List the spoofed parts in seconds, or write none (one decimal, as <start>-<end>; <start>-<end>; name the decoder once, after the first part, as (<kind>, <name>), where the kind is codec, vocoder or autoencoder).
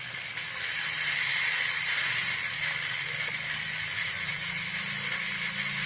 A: 4.0-4.7 (vocoder, Vocos)